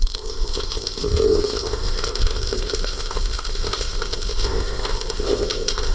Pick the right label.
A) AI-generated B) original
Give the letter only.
A